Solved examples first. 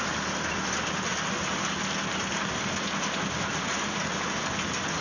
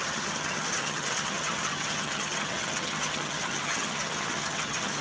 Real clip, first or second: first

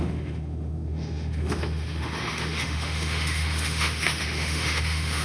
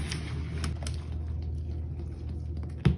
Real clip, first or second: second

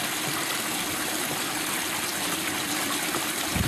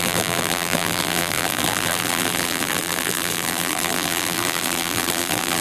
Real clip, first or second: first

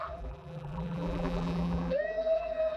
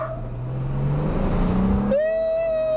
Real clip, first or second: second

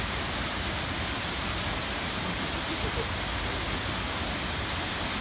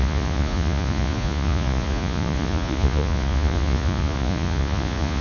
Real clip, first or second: first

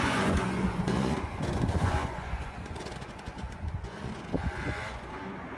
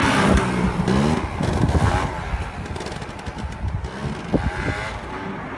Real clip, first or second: second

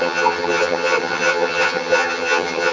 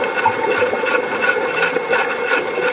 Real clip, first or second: second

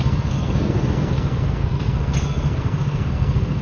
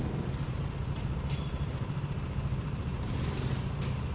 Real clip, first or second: second